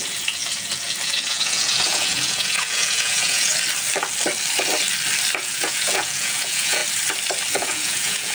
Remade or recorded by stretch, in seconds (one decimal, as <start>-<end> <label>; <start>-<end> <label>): 0.0-3.5 remade; 3.5-5.4 recorded; 5.4-6.8 remade; 6.8-7.5 recorded; 7.5-8.3 remade